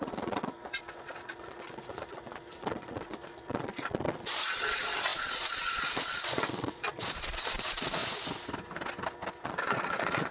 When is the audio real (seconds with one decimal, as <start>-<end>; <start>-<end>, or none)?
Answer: 8.0-9.4